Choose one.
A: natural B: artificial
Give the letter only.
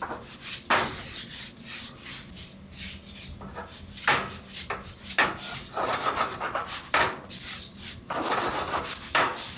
A